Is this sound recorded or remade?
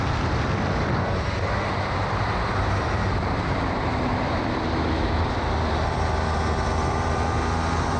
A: remade